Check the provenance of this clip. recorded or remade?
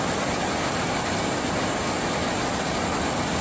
recorded